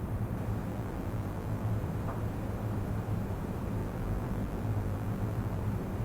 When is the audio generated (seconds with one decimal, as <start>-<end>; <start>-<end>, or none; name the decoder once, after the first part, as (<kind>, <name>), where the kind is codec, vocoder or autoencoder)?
0.7-1.7 (vocoder, BigVGAN v2); 3.8-5.6